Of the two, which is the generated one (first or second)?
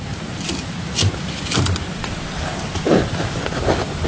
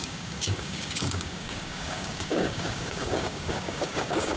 second